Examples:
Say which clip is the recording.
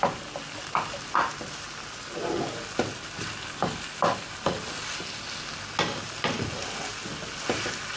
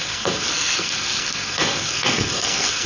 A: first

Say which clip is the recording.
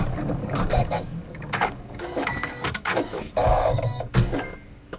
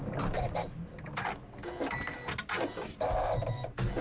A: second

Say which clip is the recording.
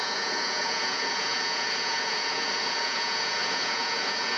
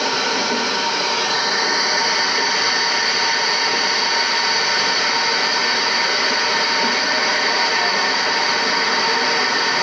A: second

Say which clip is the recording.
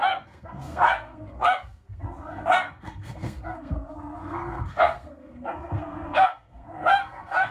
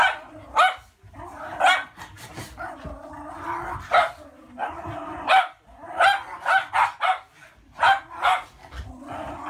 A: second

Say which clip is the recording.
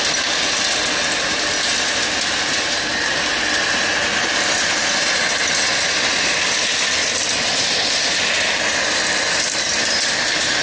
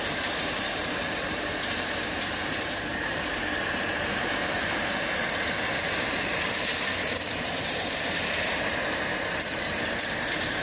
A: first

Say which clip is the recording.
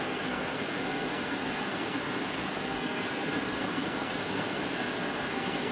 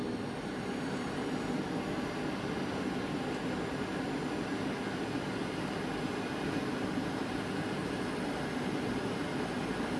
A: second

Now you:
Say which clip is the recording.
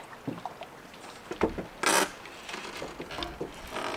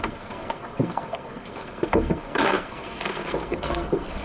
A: first